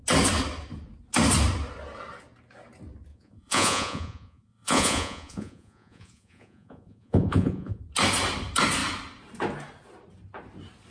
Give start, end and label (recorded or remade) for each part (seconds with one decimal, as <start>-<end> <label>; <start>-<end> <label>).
0.0-3.1 recorded; 3.1-7.8 remade; 7.8-10.9 recorded